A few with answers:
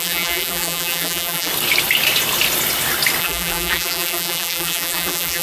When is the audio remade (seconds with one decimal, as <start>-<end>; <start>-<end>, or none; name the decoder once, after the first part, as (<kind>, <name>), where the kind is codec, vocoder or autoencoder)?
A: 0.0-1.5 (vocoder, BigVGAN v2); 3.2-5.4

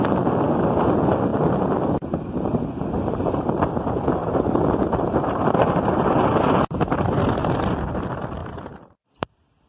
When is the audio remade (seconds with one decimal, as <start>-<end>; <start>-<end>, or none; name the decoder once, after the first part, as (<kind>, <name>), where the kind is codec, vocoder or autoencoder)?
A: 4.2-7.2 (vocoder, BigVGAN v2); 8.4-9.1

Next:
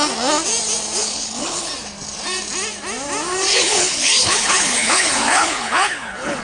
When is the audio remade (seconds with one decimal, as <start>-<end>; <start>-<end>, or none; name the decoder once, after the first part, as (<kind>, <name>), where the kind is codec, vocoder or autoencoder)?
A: 1.0-1.7 (codec, HILCodec); 3.5-6.4

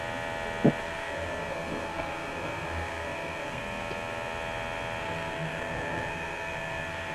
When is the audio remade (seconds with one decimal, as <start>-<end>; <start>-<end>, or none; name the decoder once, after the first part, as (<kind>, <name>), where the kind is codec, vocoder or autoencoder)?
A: 0.8-3.6 (codec, SNAC); 5.0-7.1

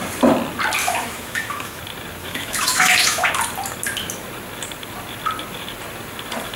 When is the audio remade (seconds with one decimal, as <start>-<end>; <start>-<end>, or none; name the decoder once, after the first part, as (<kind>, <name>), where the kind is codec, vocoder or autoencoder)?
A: 0.8-1.8 (autoencoder, DAC-VAE); 2.2-3.3